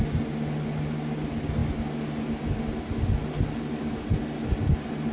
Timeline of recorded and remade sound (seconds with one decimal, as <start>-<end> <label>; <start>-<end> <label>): 0.0-5.1 recorded